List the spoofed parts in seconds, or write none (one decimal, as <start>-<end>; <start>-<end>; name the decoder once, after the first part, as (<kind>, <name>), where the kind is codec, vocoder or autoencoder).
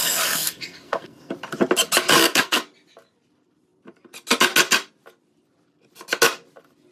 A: 0.0-1.3 (codec, SNAC); 2.1-2.6